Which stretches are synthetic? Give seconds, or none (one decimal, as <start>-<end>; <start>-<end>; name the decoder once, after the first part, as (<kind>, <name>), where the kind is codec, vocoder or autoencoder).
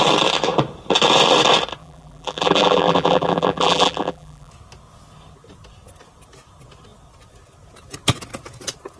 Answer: 1.8-4.5 (vocoder, BigVGAN v2)